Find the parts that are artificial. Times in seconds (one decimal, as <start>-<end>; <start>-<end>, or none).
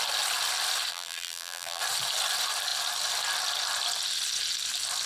0.9-1.8